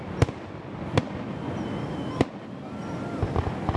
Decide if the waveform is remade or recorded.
recorded